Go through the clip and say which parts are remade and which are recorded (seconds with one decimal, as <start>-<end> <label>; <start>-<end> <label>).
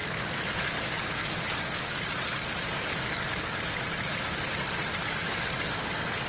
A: 0.0-4.1 remade; 4.1-5.1 recorded; 5.1-6.3 remade